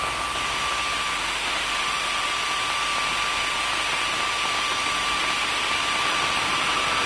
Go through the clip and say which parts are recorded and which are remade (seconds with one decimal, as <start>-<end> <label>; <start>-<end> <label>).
0.0-1.2 recorded; 1.2-2.3 remade; 2.3-7.1 recorded

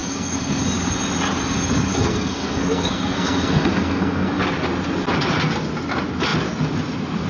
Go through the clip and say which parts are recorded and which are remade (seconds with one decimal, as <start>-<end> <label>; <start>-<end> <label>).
0.0-0.6 remade; 0.6-1.9 recorded; 1.9-4.4 remade; 4.4-7.3 recorded

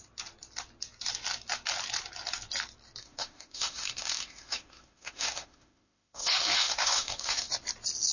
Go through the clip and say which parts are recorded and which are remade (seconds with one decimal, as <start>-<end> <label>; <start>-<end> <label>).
0.0-3.0 recorded; 3.0-7.5 remade; 7.5-8.1 recorded

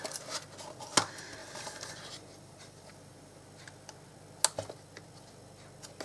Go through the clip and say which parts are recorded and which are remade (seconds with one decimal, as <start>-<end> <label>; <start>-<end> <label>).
0.0-1.4 recorded; 1.4-3.4 remade; 3.4-6.0 recorded

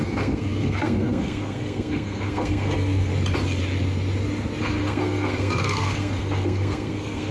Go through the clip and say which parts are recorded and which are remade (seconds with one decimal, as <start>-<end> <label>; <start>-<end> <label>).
0.0-3.1 remade; 3.1-4.6 recorded; 4.6-7.3 remade

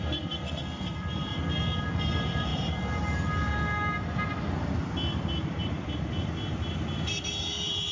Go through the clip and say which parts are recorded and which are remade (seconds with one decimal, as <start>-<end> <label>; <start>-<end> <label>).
0.0-1.3 remade; 1.3-1.8 recorded; 1.8-2.5 remade; 2.5-4.5 recorded; 4.5-7.9 remade

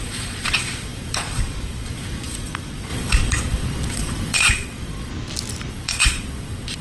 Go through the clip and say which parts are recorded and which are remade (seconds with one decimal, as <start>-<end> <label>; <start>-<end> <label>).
0.0-5.1 remade; 5.1-5.7 recorded; 5.7-6.8 remade

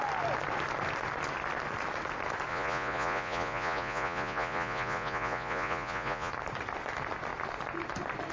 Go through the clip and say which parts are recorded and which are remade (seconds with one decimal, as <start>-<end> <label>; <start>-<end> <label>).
0.0-2.5 recorded; 2.5-6.3 remade; 6.3-8.3 recorded